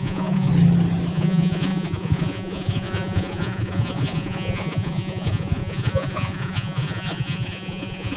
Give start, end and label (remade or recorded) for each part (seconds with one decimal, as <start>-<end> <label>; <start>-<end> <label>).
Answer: 0.0-0.5 remade; 0.5-1.1 recorded; 1.1-8.2 remade